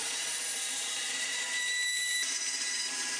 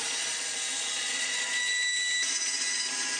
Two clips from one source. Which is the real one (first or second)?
second